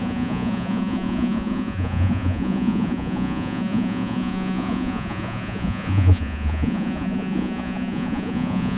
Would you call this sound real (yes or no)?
no